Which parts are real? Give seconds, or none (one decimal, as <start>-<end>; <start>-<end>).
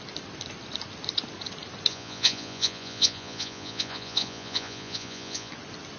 0.0-1.9; 5.5-6.0